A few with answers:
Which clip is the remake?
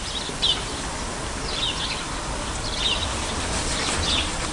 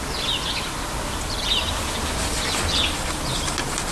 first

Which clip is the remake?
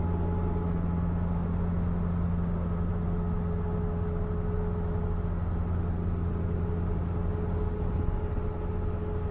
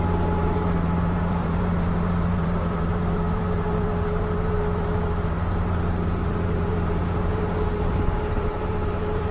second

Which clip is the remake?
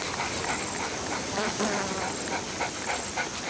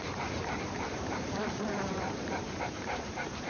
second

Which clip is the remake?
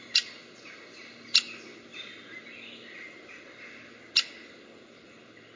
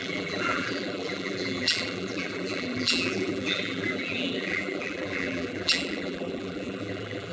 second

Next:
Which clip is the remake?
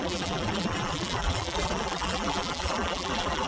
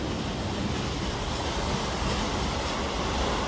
first